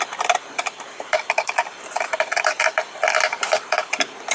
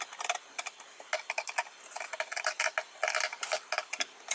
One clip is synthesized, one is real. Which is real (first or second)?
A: second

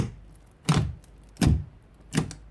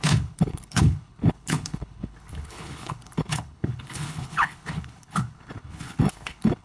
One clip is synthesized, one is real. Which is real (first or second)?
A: first